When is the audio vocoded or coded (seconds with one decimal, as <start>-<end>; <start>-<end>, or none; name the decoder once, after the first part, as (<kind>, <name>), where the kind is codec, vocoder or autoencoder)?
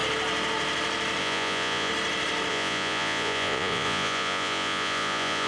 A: 1.2-1.9 (vocoder, Vocos); 2.5-5.5